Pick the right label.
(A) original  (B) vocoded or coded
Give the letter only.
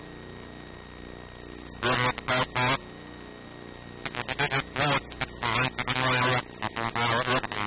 A